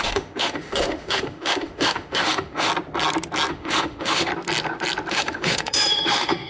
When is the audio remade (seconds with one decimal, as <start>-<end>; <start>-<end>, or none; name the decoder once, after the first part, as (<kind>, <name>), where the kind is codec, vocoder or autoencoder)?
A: 0.0-2.7 (autoencoder, DAC-VAE); 3.5-4.3; 5.1-6.5